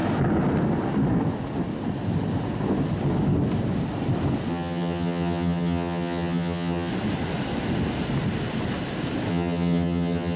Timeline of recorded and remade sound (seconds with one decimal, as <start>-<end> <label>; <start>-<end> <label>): 0.0-4.5 recorded; 4.5-6.9 remade; 6.9-9.3 recorded; 9.3-10.4 remade